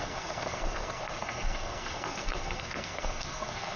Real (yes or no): no